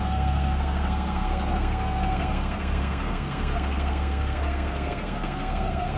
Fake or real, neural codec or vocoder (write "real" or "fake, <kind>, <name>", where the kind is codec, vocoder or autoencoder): fake, codec, SNAC